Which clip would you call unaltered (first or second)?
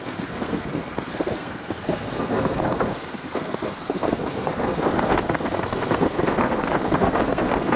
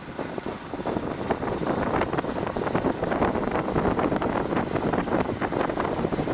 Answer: second